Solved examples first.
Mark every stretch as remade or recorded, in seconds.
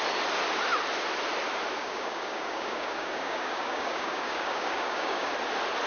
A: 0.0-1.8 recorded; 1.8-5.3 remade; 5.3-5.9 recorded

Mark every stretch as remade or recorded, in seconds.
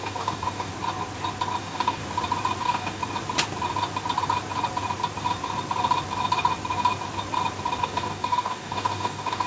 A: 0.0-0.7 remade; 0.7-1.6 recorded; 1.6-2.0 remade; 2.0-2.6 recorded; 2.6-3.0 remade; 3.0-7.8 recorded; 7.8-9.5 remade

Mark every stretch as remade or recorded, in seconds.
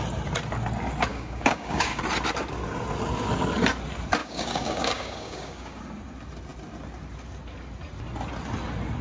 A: 0.0-1.1 recorded; 1.1-2.0 remade; 2.0-4.2 recorded; 4.2-5.8 remade; 5.8-9.0 recorded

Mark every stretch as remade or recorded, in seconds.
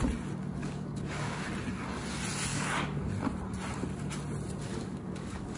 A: 0.0-0.6 recorded; 0.6-1.4 remade; 1.4-2.5 recorded; 2.5-3.1 remade; 3.1-4.7 recorded; 4.7-5.6 remade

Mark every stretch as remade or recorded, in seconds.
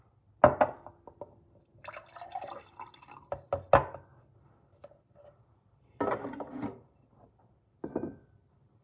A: 0.0-8.8 recorded